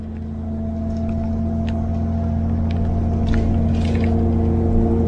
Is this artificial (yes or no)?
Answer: no